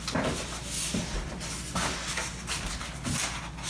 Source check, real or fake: real